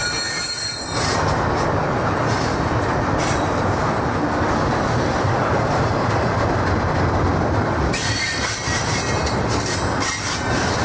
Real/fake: real